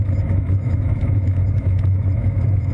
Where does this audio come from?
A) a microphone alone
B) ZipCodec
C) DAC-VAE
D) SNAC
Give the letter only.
C